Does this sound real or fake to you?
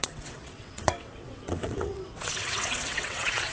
fake